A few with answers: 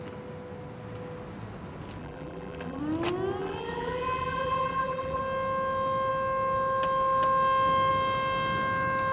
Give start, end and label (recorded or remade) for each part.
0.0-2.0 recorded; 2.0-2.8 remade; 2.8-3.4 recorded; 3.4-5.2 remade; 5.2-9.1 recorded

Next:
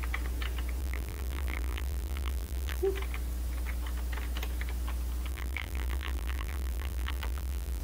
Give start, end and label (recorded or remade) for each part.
0.0-0.8 recorded; 0.8-2.8 remade; 2.8-5.3 recorded; 5.3-7.8 remade

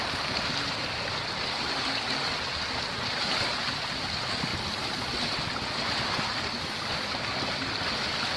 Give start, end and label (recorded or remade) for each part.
0.0-8.4 recorded

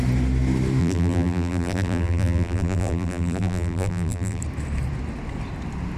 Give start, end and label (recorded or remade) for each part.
0.0-0.8 recorded; 0.8-4.4 remade; 4.4-6.0 recorded

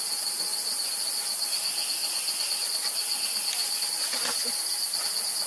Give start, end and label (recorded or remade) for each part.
0.0-5.5 recorded

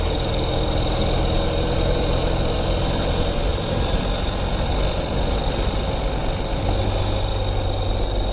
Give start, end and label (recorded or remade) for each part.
0.0-3.5 recorded; 3.5-4.0 remade; 4.0-8.3 recorded

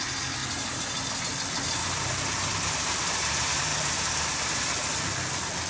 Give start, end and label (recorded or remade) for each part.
0.0-0.4 recorded; 0.4-1.1 remade; 1.1-1.8 recorded; 1.8-3.3 remade; 3.3-3.7 recorded; 3.7-4.6 remade; 4.6-5.7 recorded